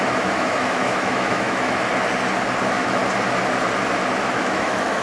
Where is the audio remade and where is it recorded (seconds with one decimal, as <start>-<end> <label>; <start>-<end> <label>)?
0.0-1.9 remade; 1.9-2.6 recorded; 2.6-3.0 remade; 3.0-4.3 recorded; 4.3-5.0 remade